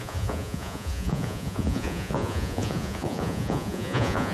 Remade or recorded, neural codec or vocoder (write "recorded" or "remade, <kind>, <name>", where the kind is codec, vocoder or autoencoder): remade, vocoder, Vocos